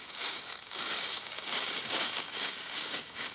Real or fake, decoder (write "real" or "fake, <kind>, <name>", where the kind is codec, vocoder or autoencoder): fake, codec, DAC